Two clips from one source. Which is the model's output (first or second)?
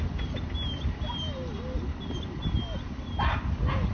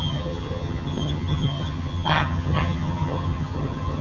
second